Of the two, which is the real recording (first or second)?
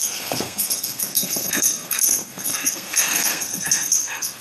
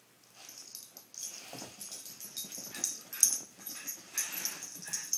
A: second